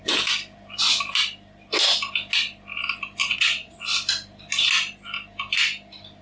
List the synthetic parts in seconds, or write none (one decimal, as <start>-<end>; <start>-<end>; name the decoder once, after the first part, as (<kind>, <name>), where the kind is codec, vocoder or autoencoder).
3.2-3.8 (vocoder, WaveNeXt)